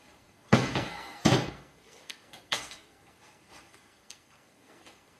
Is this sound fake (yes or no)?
yes